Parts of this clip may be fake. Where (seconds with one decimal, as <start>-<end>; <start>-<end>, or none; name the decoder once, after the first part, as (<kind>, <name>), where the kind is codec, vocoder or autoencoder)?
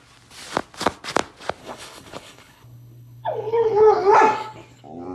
1.6-4.2 (codec, HILCodec)